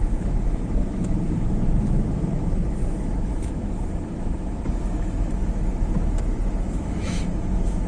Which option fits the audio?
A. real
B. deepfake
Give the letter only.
B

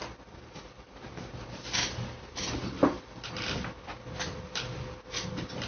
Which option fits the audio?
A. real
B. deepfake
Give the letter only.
A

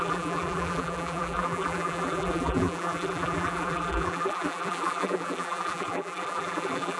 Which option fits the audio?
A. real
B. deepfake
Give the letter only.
B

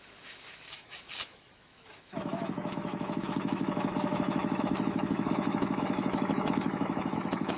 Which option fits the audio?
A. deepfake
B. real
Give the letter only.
A